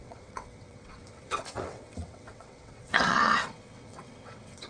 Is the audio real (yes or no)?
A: no